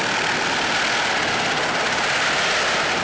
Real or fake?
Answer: real